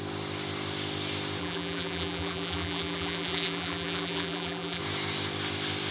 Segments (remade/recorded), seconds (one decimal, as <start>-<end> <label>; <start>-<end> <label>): 0.0-1.4 recorded; 1.4-4.8 remade; 4.8-5.9 recorded